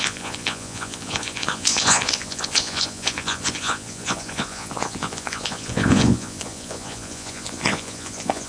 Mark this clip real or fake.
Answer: fake